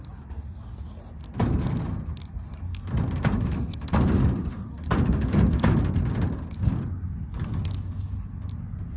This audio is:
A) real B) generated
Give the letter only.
A